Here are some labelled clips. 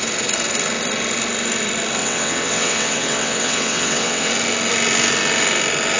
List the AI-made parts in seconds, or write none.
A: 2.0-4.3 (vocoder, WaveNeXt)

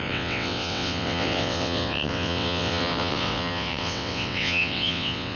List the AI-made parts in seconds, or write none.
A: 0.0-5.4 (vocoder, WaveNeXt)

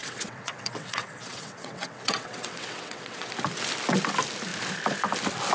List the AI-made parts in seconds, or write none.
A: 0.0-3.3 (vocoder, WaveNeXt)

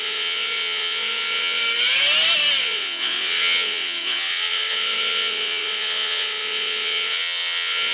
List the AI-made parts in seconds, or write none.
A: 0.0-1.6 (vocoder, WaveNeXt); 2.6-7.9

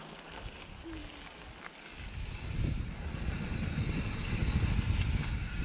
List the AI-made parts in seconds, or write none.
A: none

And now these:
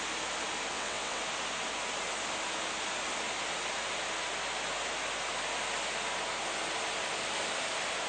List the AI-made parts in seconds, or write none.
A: 0.7-1.2 (vocoder, WaveNeXt)

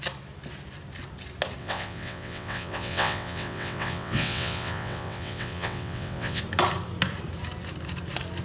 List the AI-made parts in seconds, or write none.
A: 1.6-6.4 (vocoder, WaveNeXt)

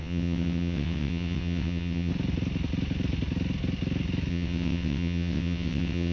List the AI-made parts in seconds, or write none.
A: 0.0-2.1 (vocoder, WaveNeXt); 4.3-6.1